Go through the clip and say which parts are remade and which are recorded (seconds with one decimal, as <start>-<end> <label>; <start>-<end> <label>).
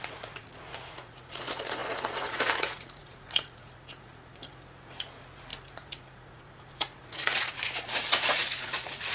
0.0-9.1 remade